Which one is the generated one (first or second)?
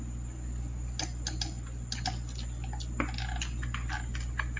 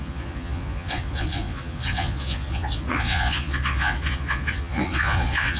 second